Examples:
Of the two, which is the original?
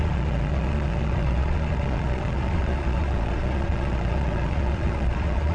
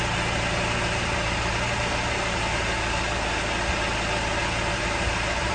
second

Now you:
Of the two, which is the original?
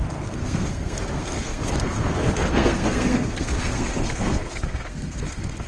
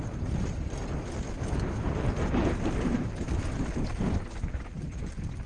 second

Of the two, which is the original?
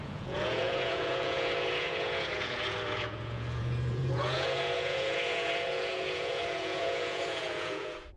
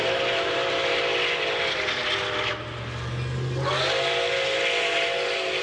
second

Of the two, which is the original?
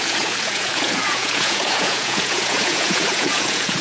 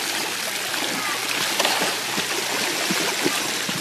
second